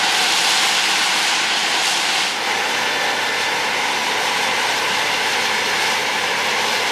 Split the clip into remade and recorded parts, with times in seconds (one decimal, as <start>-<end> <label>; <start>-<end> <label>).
0.0-1.6 recorded; 1.6-5.7 remade; 5.7-6.9 recorded

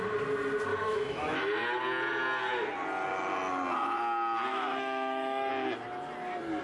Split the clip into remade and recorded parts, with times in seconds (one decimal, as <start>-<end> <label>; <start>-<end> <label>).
0.0-0.7 recorded; 0.7-1.4 remade; 1.4-4.5 recorded; 4.5-5.5 remade; 5.5-6.6 recorded

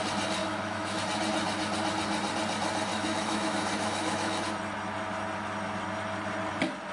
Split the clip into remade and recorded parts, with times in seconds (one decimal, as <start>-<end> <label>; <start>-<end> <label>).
0.0-0.4 recorded; 0.4-1.0 remade; 1.0-2.9 recorded; 2.9-4.4 remade; 4.4-6.9 recorded